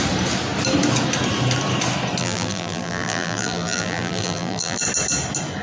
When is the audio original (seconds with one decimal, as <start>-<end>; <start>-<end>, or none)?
0.0-2.2; 4.8-5.6